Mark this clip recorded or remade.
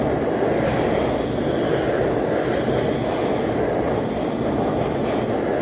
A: recorded